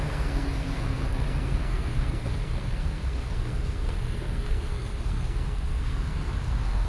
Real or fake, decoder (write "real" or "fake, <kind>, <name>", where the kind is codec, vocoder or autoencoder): fake, codec, SNAC